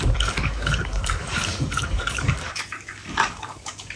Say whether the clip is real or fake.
fake